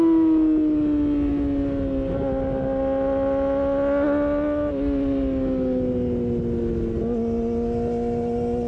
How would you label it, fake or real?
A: real